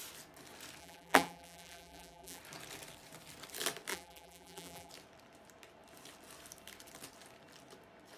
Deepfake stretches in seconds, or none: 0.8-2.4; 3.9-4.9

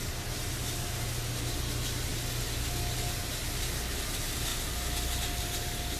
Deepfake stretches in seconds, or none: none

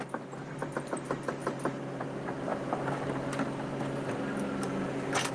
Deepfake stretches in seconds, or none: none

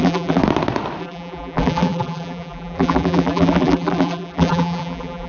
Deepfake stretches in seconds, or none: 0.0-0.4; 1.0-5.3

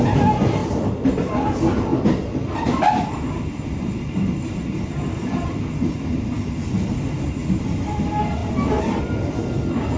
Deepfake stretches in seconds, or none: 0.6-1.5; 1.9-6.6; 7.4-8.0